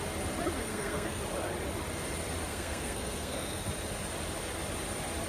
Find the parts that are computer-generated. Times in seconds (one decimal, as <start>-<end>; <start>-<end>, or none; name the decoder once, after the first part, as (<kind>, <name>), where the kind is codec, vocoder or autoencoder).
0.6-1.2 (codec, SNAC); 2.5-3.6